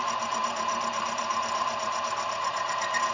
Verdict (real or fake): fake